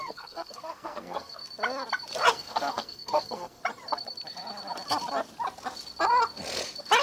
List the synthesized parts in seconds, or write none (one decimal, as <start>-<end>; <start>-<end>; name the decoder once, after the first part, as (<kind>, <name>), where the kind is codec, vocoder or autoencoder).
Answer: 0.0-1.4 (codec, SNAC); 2.3-3.6